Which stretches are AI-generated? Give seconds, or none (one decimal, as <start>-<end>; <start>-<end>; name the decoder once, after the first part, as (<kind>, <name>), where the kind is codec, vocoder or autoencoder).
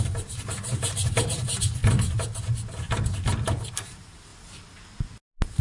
0.0-1.8 (vocoder, BigVGAN v2); 3.7-4.3